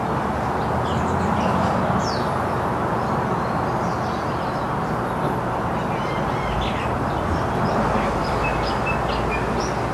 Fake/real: real